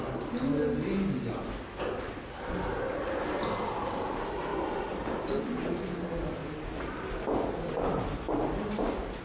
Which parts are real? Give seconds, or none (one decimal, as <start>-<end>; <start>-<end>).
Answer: 0.0-9.2